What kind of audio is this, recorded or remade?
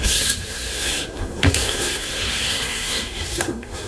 remade